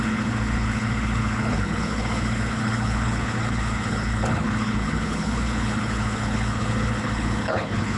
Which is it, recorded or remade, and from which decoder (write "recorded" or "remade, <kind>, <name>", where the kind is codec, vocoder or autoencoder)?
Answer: remade, codec, HILCodec